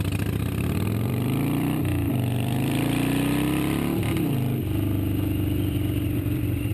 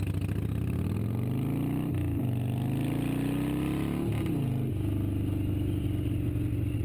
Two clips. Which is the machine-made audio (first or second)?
first